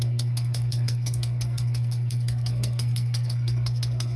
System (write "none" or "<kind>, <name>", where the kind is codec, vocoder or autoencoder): codec, SNAC